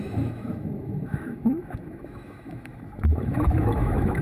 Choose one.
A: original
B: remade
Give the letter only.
B